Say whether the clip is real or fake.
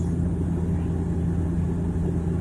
real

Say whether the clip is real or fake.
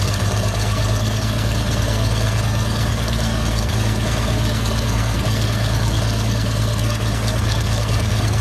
fake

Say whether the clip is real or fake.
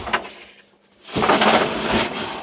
real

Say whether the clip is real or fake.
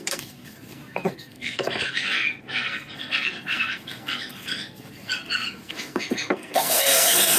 fake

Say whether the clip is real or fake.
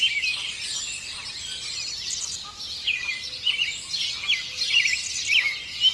real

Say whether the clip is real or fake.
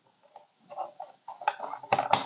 real